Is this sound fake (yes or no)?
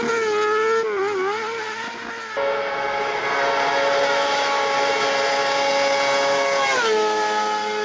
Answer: no